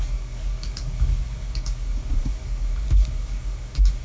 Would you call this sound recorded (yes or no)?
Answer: no